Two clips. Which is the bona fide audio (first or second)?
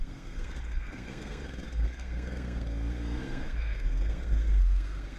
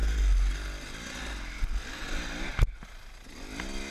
second